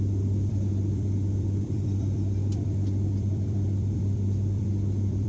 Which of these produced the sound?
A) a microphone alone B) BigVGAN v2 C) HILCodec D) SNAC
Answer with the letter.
B